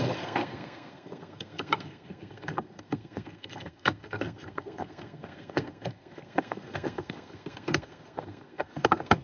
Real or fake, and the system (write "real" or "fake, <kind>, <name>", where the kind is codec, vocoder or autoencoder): fake, codec, SNAC